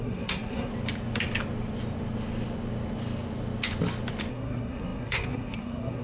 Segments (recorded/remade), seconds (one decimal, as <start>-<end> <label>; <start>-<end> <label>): 0.0-0.7 remade; 0.7-4.3 recorded; 4.3-6.0 remade